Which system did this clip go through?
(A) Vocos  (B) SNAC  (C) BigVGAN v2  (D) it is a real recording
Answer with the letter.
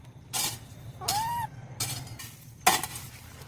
C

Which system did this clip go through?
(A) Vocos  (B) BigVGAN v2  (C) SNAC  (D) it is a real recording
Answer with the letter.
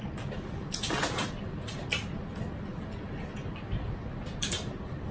D